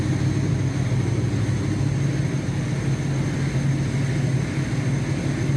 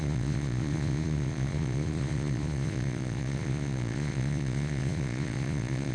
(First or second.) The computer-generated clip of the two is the second